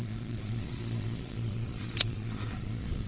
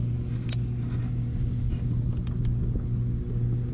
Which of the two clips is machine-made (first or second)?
first